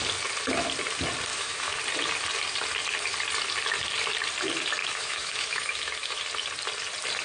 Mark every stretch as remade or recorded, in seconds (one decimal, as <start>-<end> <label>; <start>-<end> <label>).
0.0-1.3 recorded; 1.3-1.8 remade; 1.8-4.8 recorded; 4.8-6.2 remade; 6.2-7.2 recorded